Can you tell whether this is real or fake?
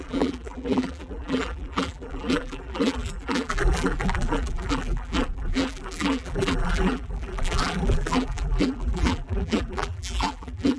fake